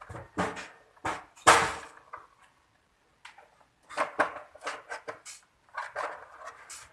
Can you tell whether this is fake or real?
real